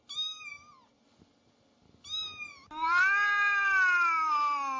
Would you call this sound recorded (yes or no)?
yes